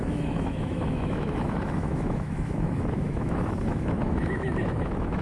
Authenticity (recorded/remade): remade